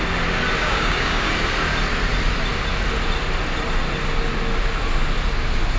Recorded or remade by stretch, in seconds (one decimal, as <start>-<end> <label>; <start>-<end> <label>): 0.0-0.6 recorded; 0.6-1.3 remade; 1.3-5.8 recorded